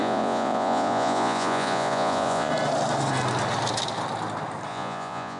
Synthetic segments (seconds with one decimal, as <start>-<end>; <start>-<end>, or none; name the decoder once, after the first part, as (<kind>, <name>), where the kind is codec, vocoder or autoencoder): 0.0-2.5 (vocoder, Vocos); 4.7-5.4